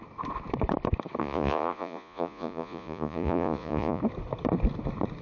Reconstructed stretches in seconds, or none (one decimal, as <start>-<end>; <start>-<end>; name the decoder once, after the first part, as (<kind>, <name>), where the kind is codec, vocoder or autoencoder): 1.2-4.0 (vocoder, Vocos)